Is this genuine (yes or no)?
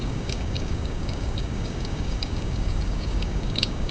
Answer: no